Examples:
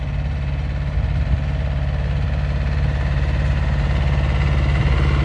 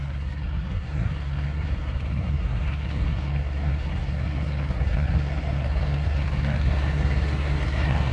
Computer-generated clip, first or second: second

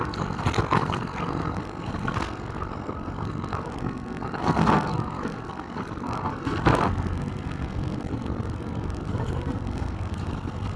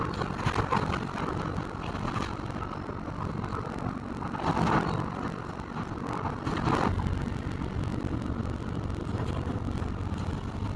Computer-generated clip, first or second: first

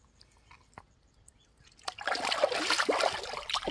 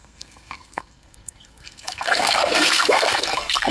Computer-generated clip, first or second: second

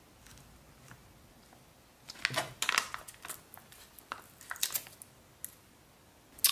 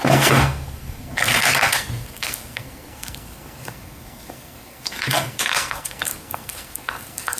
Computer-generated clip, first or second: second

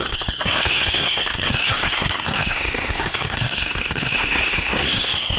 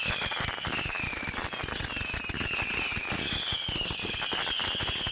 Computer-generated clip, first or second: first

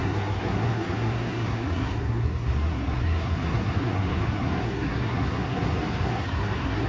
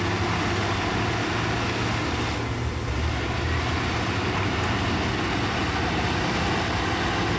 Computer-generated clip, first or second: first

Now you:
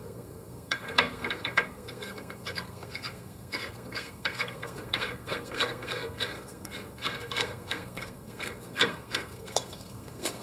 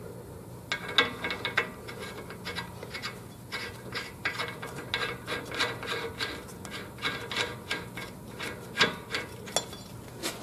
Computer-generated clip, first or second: first